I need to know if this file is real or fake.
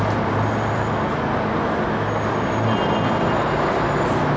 real